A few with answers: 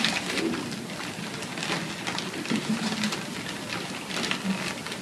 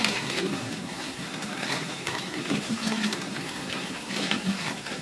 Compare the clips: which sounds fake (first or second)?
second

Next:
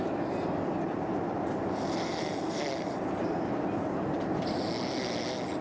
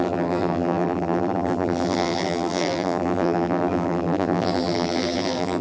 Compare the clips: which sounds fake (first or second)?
second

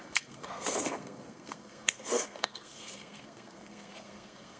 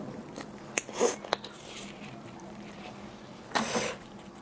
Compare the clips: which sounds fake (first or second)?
first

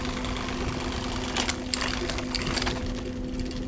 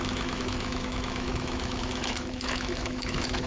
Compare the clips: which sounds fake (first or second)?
second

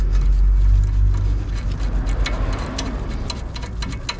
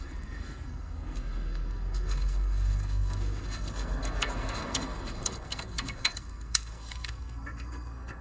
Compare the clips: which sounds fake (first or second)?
second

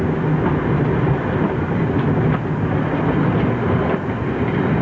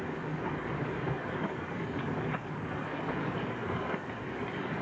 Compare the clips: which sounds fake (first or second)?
second